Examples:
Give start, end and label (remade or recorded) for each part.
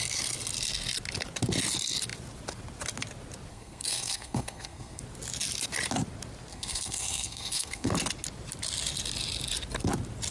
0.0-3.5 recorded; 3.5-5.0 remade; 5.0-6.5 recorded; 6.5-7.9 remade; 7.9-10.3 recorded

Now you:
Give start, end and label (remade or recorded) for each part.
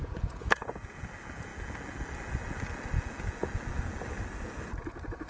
0.0-0.7 remade; 0.7-5.3 recorded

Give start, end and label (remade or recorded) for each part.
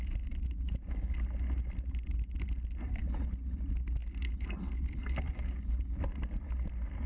0.0-7.1 recorded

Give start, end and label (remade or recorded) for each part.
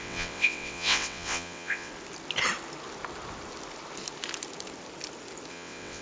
0.0-1.9 remade; 1.9-5.5 recorded; 5.5-6.0 remade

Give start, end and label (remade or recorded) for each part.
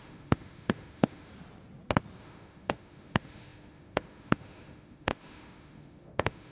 0.0-1.3 remade; 1.3-2.2 recorded; 2.2-6.5 remade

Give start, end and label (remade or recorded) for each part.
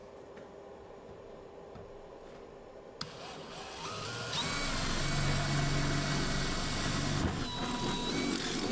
0.0-8.7 recorded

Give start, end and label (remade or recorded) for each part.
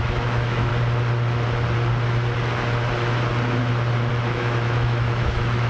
0.0-0.7 remade; 0.7-4.1 recorded; 4.1-5.7 remade